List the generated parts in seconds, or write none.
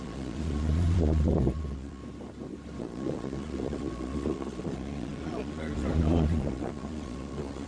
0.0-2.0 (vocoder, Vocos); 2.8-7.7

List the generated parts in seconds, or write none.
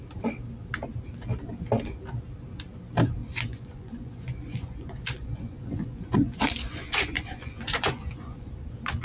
3.2-8.5 (vocoder, Vocos)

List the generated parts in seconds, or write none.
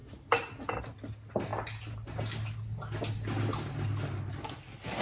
none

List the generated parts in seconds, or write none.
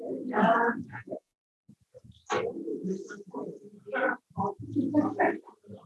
0.9-1.7 (vocoder, Vocos)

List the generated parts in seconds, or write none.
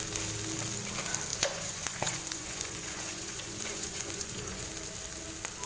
1.3-4.7 (vocoder, Vocos)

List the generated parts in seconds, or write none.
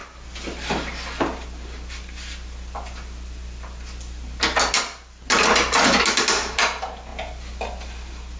none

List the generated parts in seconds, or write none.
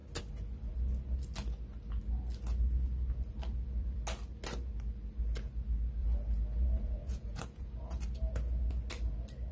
6.0-8.0 (vocoder, Vocos)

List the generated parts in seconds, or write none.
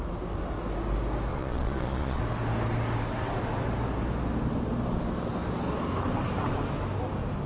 1.3-2.2 (vocoder, Vocos)